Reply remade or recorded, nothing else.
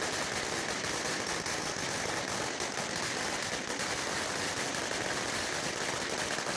recorded